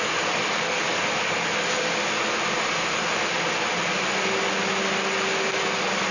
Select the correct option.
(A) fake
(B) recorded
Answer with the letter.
B